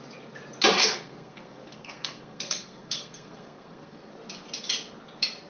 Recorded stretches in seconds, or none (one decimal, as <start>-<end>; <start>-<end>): 0.0-0.8; 4.1-5.5